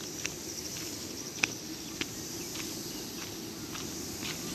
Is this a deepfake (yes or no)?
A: no